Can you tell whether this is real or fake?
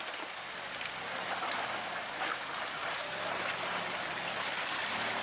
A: real